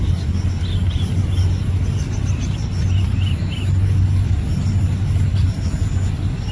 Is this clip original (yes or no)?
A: yes